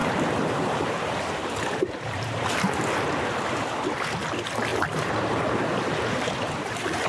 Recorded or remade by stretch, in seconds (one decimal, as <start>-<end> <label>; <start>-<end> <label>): 0.0-2.6 remade; 2.6-4.7 recorded; 4.7-7.1 remade